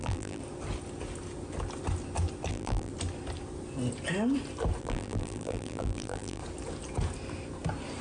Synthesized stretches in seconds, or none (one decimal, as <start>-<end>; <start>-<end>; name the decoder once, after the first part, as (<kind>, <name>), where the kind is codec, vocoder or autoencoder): 0.0-0.4 (vocoder, BigVGAN v2); 2.5-2.9; 4.8-6.4